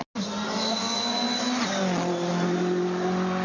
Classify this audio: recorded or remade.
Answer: recorded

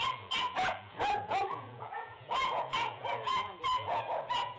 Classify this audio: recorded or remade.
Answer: remade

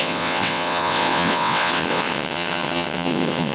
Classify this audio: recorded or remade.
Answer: remade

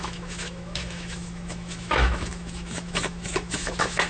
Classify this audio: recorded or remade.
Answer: remade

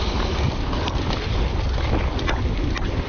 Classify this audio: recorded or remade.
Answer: recorded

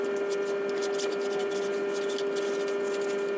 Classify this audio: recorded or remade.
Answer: recorded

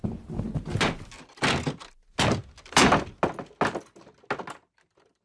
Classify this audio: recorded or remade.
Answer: recorded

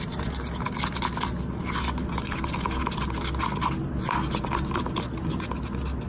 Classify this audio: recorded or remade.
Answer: recorded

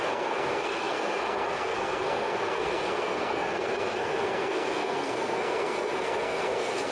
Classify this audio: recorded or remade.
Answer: remade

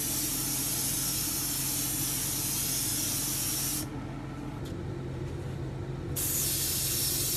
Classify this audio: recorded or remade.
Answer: recorded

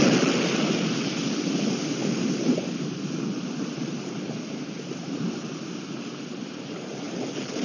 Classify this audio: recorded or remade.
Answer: recorded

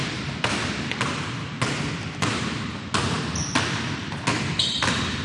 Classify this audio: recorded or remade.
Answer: recorded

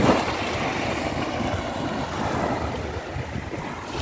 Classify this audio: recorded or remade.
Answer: recorded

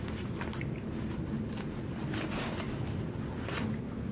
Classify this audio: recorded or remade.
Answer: recorded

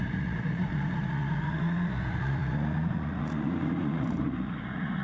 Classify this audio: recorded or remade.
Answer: remade